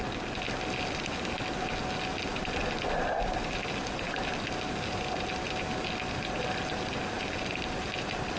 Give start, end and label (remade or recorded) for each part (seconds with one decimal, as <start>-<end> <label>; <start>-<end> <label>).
0.0-8.4 recorded